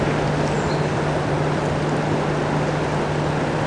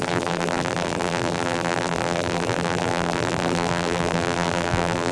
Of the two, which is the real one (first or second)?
first